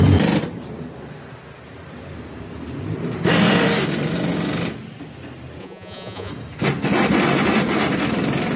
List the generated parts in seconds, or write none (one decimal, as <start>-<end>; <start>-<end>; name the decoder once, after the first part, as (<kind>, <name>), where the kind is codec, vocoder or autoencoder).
5.6-6.3 (vocoder, Vocos)